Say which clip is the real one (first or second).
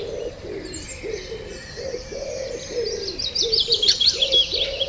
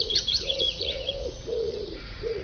first